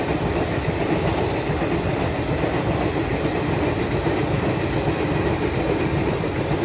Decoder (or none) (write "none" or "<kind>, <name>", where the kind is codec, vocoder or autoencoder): none